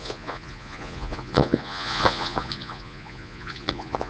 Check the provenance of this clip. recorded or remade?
remade